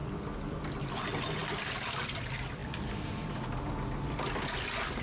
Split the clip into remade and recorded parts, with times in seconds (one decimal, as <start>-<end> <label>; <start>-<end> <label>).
0.0-0.7 remade; 0.7-1.4 recorded; 1.4-2.0 remade; 2.0-5.0 recorded